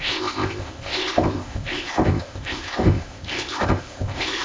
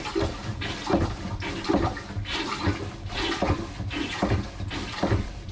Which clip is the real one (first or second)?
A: second